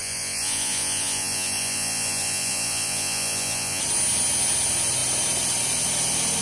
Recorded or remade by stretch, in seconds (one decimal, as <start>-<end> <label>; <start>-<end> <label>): 0.0-3.8 remade; 3.8-6.4 recorded